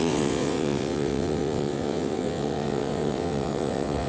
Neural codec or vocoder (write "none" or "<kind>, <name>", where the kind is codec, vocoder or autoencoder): vocoder, WaveNeXt